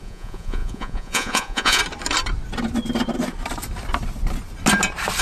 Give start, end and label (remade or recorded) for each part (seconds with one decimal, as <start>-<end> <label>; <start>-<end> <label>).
0.0-1.8 remade; 1.8-5.2 recorded